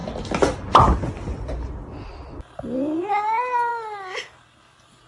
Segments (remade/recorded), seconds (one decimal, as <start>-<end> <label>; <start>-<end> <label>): 0.0-5.1 recorded